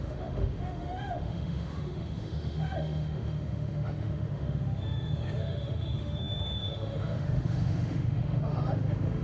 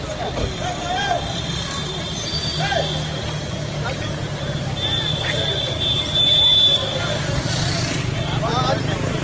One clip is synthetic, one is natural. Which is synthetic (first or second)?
first